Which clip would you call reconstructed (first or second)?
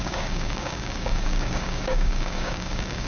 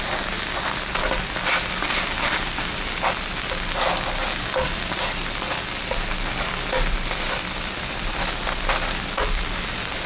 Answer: first